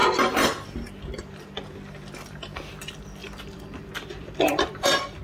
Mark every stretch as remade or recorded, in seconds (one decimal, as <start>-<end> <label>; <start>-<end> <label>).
0.0-1.2 remade; 1.2-3.2 recorded; 3.2-5.2 remade